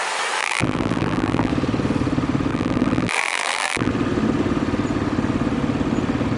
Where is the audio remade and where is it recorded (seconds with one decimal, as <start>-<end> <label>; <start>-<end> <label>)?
0.0-0.4 recorded; 0.4-1.5 remade; 1.5-2.5 recorded; 2.5-3.9 remade; 3.9-6.4 recorded